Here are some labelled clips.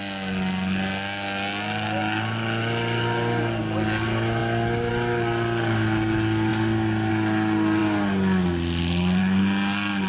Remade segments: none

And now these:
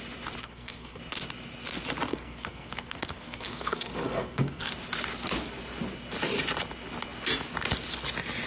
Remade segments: 0.4-1.0; 2.1-4.7

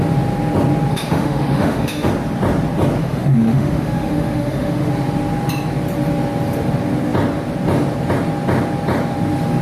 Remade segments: 0.9-2.1; 3.0-4.9

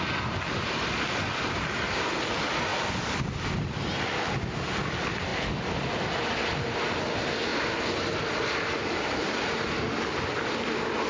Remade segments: none

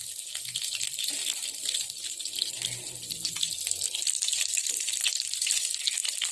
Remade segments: none

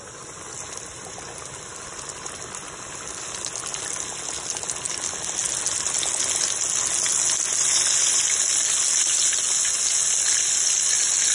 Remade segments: none

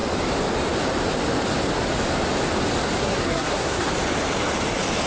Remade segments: 3.0-3.9